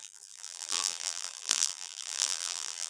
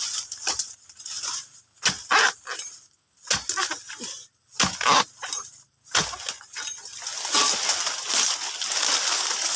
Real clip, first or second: second